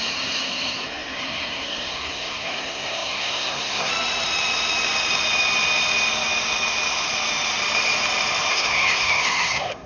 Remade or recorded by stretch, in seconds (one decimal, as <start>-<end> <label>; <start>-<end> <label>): 0.0-3.9 remade; 3.9-8.5 recorded; 8.5-9.9 remade

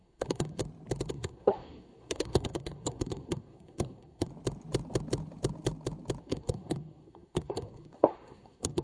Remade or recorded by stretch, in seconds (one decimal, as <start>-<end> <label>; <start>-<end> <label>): 0.0-0.6 remade; 0.6-1.1 recorded; 1.1-4.3 remade; 4.3-6.2 recorded; 6.2-8.8 remade